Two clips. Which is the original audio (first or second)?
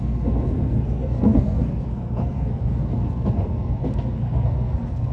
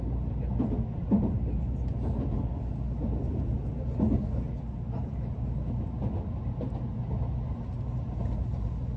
second